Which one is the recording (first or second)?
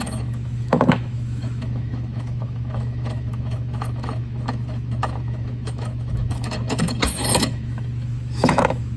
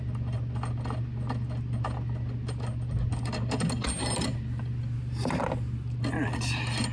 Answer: second